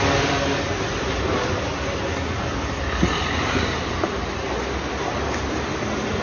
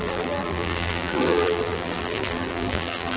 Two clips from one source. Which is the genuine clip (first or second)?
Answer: first